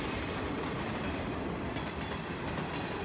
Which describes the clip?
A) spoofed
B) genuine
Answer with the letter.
B